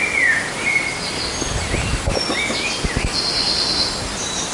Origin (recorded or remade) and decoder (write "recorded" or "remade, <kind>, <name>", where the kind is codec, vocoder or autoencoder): recorded